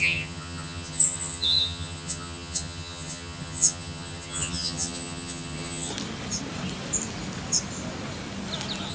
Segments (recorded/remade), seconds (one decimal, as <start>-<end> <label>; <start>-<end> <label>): 0.0-5.9 remade; 5.9-8.9 recorded